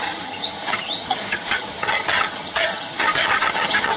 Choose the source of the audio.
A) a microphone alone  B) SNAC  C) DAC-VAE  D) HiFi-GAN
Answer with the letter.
D